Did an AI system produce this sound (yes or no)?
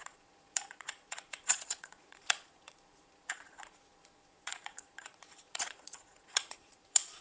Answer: yes